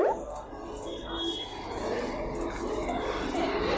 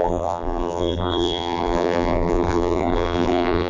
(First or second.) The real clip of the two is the first